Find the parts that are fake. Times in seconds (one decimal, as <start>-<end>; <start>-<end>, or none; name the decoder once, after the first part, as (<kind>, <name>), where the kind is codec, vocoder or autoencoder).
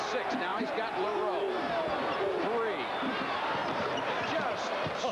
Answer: 0.5-1.7 (vocoder, BigVGAN v2); 3.6-5.1